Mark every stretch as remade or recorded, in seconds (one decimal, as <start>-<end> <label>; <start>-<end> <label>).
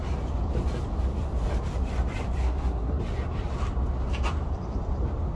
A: 0.0-2.4 recorded; 2.4-3.0 remade; 3.0-5.4 recorded